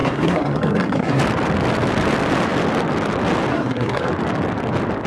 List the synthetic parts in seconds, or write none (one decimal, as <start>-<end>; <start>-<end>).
0.0-1.2; 3.5-4.1